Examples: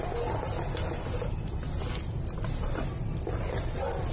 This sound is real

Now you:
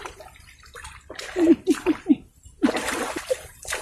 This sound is fake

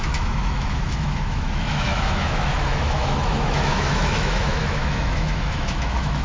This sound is fake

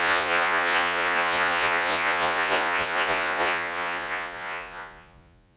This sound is fake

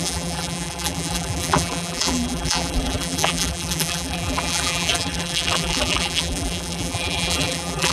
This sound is fake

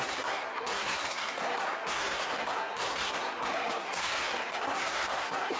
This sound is fake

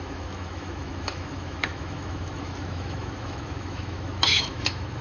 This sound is fake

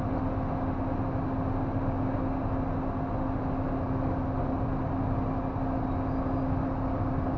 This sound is real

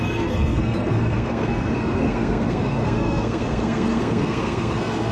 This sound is fake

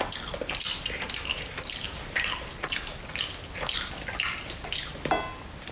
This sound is real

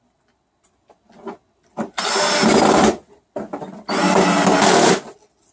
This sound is real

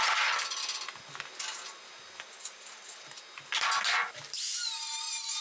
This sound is real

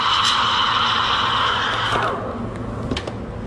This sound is real